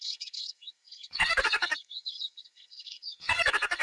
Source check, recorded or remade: remade